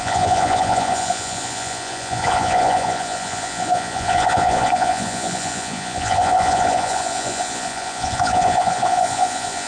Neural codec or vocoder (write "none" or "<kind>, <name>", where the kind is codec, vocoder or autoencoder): vocoder, Vocos